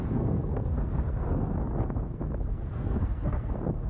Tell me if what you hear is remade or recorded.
remade